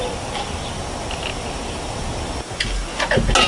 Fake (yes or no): no